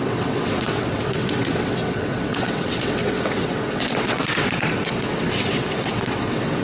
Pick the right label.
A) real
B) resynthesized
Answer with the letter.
B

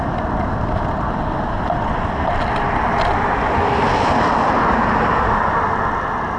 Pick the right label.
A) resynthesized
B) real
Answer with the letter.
B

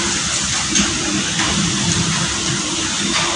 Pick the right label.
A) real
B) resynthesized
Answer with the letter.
A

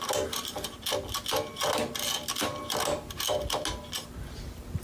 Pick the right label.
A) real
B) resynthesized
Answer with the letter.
A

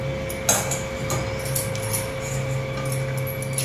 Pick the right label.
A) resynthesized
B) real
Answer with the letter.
B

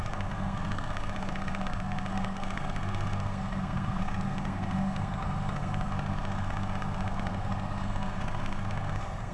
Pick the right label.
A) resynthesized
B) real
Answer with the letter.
A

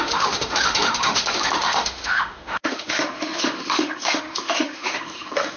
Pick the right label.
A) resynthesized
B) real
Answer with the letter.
A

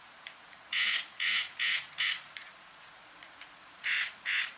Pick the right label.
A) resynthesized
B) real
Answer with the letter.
A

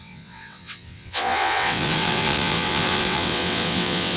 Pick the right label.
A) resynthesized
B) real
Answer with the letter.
A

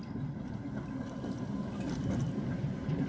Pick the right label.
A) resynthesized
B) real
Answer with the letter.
B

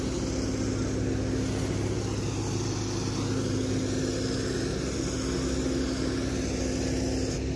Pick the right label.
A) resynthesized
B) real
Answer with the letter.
B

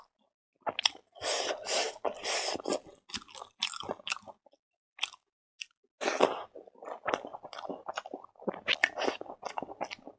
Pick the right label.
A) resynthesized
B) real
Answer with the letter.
B